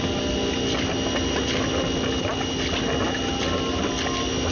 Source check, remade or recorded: recorded